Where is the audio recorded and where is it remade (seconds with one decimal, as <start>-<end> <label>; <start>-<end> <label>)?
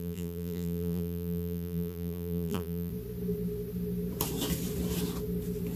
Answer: 0.0-2.9 remade; 2.9-5.8 recorded